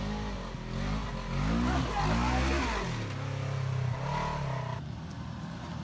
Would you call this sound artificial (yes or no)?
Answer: no